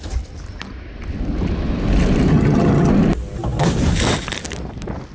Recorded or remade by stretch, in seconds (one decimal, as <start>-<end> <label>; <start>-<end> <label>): 0.0-2.3 recorded; 2.3-2.9 remade; 2.9-5.1 recorded